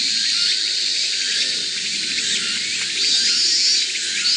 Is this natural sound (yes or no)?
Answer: yes